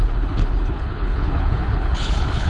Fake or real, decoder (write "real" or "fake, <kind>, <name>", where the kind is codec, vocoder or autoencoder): fake, codec, HILCodec